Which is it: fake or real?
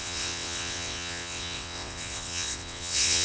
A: fake